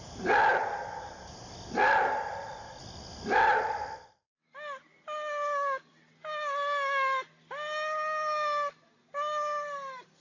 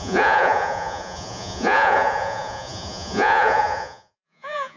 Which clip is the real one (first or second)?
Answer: first